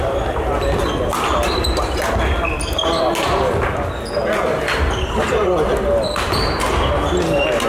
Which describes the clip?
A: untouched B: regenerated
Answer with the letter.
A